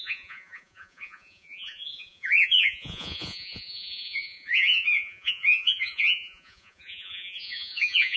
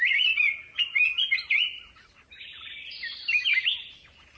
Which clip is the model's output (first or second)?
first